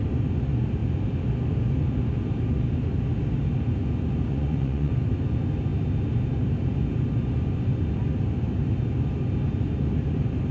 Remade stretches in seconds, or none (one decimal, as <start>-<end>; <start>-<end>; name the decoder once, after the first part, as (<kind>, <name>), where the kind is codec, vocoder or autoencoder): 4.3-4.9 (vocoder, Vocos)

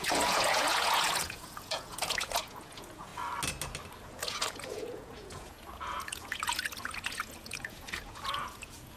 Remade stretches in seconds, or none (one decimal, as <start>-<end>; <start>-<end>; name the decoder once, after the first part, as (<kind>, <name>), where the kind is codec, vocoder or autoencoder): 0.0-3.1 (vocoder, Vocos); 4.0-9.0